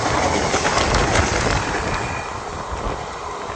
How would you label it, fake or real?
real